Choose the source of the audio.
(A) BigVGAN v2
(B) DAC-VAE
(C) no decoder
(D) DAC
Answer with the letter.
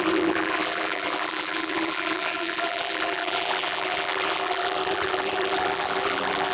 A